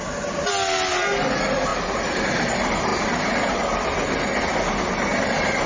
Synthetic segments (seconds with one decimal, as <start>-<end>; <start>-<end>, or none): none